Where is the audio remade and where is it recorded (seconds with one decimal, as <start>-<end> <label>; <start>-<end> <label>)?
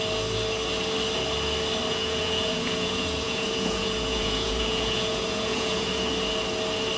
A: 0.0-1.9 recorded; 1.9-6.1 remade; 6.1-7.0 recorded